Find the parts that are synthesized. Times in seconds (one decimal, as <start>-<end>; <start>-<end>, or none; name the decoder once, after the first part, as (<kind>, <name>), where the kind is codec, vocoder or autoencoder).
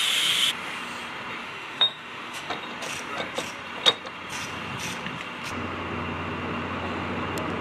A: 1.4-2.5 (autoencoder, DAC-VAE)